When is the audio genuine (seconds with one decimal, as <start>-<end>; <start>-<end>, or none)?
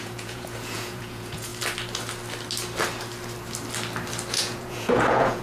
1.5-4.3